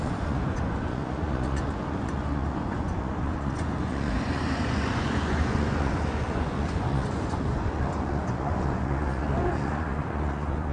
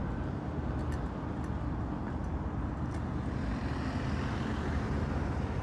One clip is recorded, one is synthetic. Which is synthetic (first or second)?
first